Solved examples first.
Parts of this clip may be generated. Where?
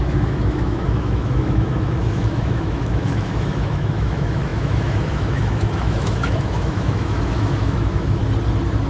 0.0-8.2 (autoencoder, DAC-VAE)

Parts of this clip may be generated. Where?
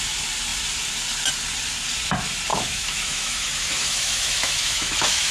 2.5-5.3 (autoencoder, DAC-VAE)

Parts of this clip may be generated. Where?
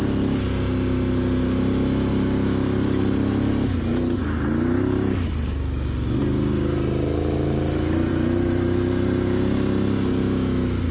none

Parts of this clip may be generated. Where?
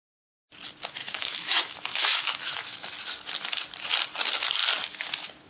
1.0-2.8 (autoencoder, DAC-VAE)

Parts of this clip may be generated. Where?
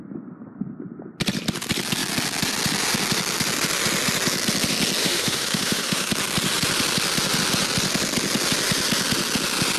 5.0-6.1 (autoencoder, DAC-VAE)